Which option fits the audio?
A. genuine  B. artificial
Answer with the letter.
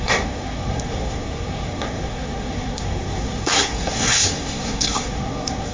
B